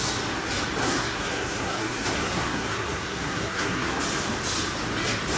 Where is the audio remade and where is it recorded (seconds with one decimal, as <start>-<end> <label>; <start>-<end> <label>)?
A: 0.0-0.8 recorded; 0.8-4.0 remade; 4.0-5.4 recorded